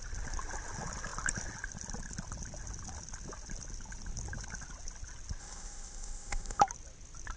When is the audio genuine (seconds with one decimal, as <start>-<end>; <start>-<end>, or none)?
0.0-5.4; 6.6-7.4